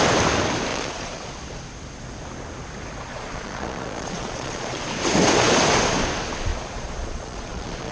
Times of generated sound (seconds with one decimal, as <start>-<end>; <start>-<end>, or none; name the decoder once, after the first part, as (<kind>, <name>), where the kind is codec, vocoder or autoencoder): 0.7-1.3 (vocoder, Vocos); 3.1-4.8; 6.5-7.9